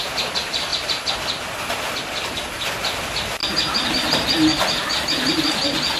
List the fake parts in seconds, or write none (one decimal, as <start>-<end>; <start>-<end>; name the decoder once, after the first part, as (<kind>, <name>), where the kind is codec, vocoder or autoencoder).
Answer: 3.4-6.0 (vocoder, BigVGAN v2)